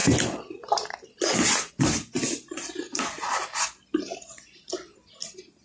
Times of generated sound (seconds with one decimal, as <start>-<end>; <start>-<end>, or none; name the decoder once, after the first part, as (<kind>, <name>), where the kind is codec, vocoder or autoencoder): none